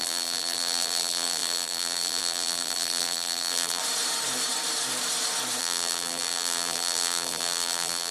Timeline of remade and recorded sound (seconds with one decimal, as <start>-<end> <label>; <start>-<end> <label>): 0.0-3.8 remade; 3.8-5.6 recorded; 5.6-8.1 remade